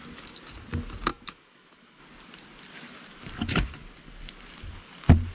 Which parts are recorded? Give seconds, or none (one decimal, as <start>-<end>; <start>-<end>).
0.0-1.1; 2.0-5.3